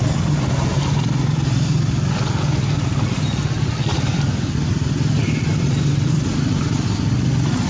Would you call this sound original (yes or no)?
no